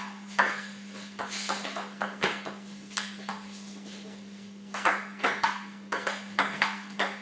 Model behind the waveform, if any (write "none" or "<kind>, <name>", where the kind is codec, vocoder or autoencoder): codec, SNAC